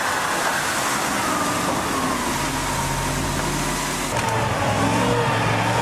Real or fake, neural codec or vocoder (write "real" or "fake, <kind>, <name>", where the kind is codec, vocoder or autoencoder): real